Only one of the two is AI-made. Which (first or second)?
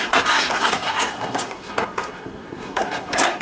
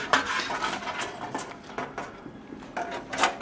first